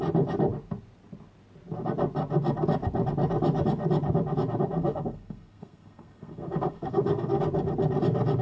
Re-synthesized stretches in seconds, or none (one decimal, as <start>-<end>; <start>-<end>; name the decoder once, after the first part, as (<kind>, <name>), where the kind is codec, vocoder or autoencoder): 4.8-7.4 (codec, SNAC)